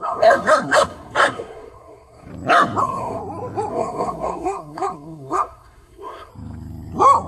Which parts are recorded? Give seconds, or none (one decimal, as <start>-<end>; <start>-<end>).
2.3-2.8; 3.2-3.7; 6.3-7.3